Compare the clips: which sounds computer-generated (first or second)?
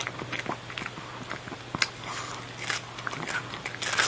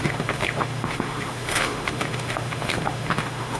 second